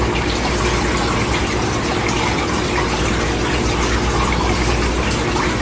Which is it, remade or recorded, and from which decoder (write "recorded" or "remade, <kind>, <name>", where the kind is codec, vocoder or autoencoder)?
recorded